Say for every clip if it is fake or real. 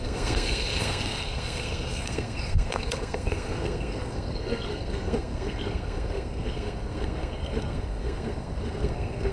fake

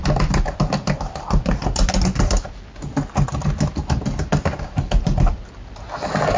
real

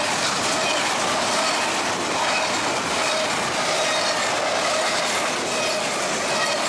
real